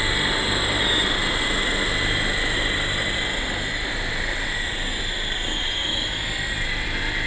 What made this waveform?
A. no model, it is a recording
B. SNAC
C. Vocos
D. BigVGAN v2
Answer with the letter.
A